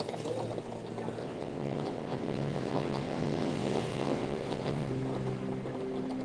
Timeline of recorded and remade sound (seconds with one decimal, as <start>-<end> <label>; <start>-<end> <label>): 0.0-1.2 recorded; 1.2-4.9 remade; 4.9-6.2 recorded